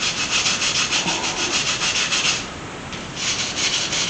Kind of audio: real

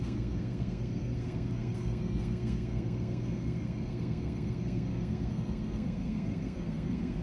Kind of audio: fake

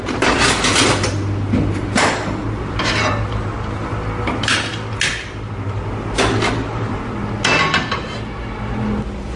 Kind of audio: real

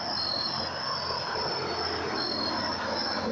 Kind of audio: real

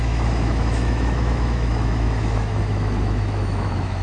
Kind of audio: fake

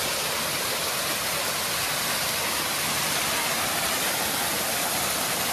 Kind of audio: real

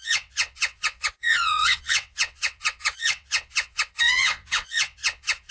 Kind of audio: fake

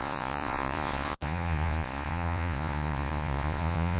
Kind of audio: fake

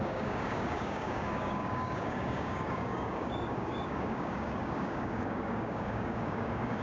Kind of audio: fake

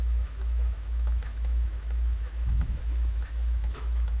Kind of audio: fake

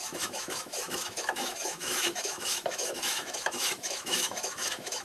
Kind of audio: fake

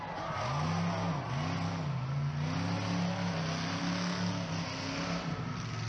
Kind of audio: real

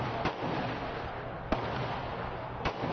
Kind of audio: real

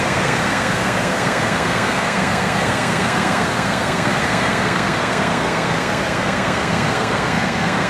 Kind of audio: fake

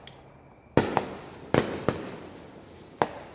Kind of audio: real